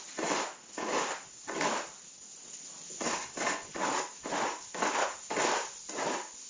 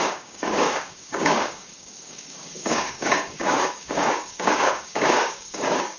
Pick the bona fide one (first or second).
first